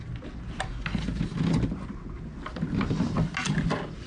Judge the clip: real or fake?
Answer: real